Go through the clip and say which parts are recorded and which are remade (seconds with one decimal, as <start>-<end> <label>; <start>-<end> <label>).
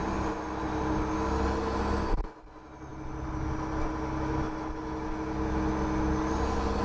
0.0-6.8 recorded